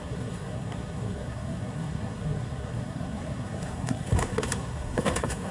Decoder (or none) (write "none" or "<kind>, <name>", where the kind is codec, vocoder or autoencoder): codec, SNAC